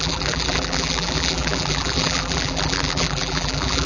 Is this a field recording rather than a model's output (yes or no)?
no